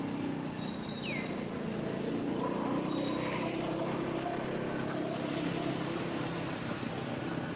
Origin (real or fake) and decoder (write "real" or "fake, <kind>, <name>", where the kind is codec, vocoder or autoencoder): real